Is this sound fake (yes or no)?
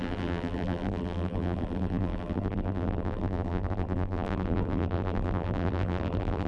yes